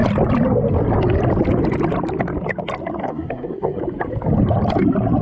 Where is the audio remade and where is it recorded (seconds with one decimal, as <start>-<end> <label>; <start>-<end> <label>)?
0.0-3.0 recorded; 3.0-3.8 remade; 3.8-5.2 recorded